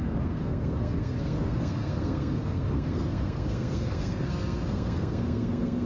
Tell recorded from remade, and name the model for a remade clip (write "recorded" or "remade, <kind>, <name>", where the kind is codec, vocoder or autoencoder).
remade, codec, SNAC